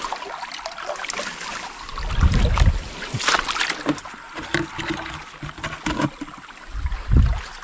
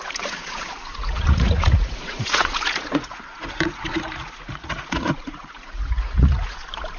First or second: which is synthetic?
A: second